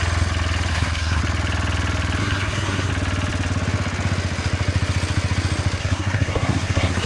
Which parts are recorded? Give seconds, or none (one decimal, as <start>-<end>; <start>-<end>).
0.0-0.7; 1.2-2.2; 2.9-5.8